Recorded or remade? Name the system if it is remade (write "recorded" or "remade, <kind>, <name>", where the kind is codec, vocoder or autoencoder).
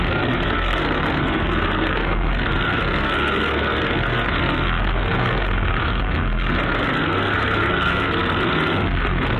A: remade, codec, SNAC